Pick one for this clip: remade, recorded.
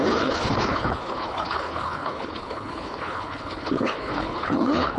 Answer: remade